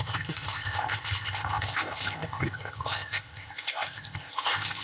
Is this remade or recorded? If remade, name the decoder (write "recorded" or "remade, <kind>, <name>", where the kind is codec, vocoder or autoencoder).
remade, codec, ZipCodec